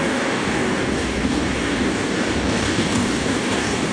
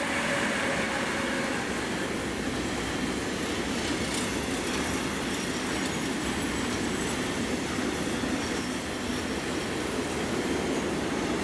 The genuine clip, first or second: second